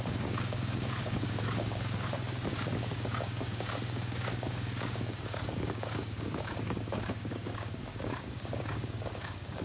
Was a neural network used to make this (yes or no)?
yes